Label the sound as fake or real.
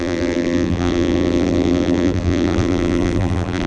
fake